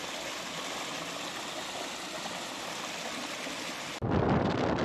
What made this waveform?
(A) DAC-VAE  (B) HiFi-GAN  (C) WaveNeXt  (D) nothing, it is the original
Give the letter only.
D